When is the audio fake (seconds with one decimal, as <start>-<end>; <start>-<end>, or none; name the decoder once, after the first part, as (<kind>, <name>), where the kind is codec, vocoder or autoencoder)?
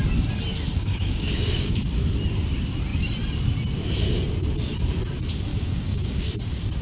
0.7-1.8 (codec, DAC); 5.5-6.3